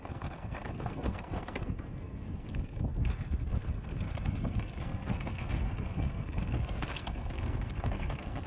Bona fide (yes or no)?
no